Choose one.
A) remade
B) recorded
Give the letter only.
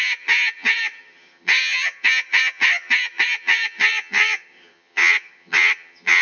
A